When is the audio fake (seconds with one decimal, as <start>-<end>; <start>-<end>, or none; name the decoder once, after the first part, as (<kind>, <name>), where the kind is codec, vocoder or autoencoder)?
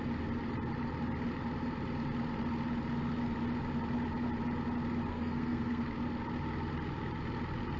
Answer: 5.1-5.8 (codec, SNAC)